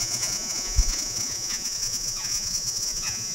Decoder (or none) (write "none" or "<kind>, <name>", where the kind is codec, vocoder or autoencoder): vocoder, Vocos